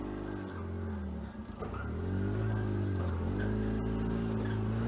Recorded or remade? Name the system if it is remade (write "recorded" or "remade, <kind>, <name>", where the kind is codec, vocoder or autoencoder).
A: recorded